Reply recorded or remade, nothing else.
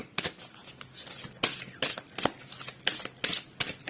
recorded